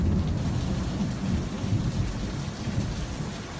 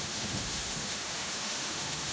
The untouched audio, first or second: first